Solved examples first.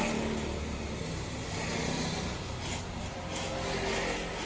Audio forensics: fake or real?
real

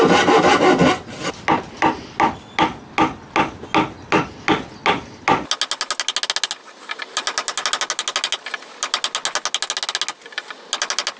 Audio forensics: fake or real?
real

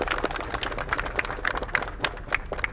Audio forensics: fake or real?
real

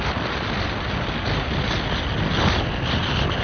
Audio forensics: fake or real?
real